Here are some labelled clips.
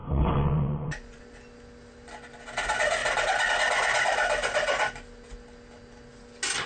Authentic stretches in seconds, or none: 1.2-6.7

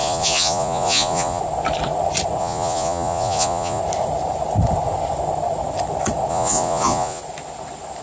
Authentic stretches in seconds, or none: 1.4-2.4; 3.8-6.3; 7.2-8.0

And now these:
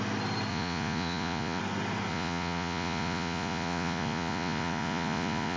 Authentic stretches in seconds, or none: 0.0-0.5; 1.6-2.1

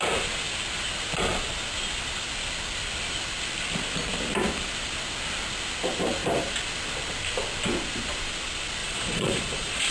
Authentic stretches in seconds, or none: 0.0-8.8

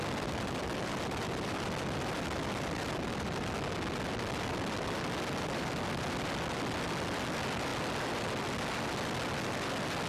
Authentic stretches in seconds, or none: 0.0-10.1

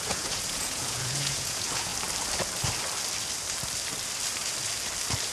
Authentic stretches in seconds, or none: 1.9-5.3

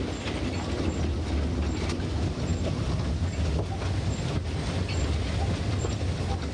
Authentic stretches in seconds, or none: 0.0-6.5